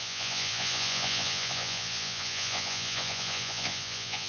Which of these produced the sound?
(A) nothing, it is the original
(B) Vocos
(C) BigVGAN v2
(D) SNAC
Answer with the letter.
B